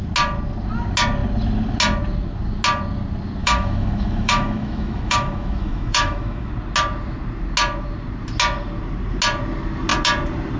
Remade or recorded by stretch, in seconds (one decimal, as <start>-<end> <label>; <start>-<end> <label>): 0.0-3.4 recorded; 3.4-6.5 remade; 6.5-10.6 recorded